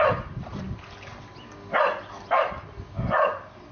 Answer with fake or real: real